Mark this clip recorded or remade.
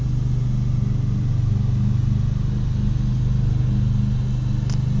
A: recorded